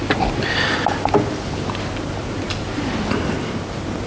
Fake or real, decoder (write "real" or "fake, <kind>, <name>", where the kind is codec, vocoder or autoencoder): real